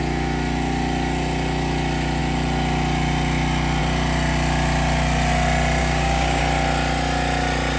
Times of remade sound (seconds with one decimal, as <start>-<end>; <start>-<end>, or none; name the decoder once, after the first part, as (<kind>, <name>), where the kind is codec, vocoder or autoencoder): 5.8-6.4 (codec, DAC)